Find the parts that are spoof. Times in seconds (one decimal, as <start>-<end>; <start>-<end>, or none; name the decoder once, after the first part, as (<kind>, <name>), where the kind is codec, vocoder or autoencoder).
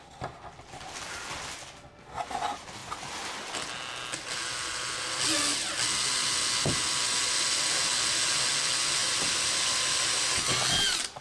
9.0-9.8 (vocoder, BigVGAN v2)